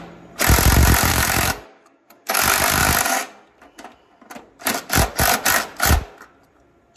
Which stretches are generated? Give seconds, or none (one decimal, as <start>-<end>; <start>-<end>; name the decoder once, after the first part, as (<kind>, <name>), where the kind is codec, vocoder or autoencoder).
1.1-2.4 (codec, DAC)